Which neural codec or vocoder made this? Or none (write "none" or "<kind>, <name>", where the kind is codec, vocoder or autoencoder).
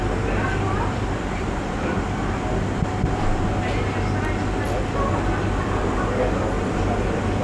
none